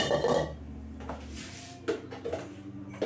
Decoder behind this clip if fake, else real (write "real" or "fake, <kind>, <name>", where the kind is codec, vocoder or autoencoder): real